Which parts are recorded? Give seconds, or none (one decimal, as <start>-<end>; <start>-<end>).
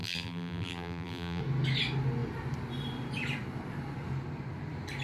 1.4-5.0